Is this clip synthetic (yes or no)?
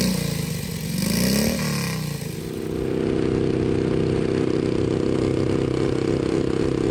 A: no